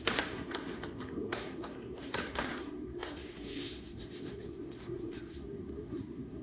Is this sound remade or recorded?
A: remade